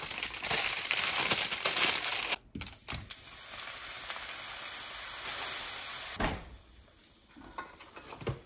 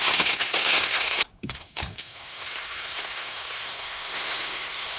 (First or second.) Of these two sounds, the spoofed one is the second